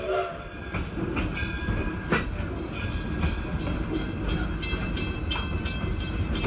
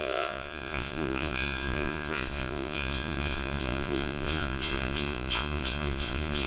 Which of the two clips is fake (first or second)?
second